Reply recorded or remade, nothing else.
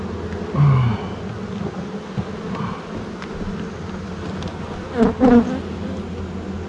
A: recorded